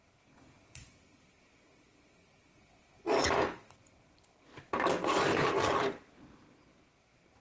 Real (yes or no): yes